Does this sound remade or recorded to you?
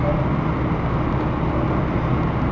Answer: recorded